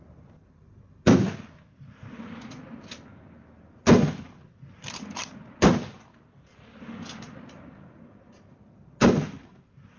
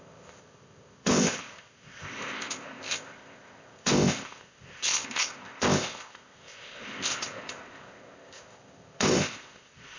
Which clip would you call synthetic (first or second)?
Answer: second